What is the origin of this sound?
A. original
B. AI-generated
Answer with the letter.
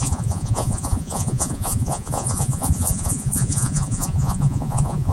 B